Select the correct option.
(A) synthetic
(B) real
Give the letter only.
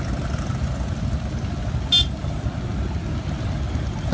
B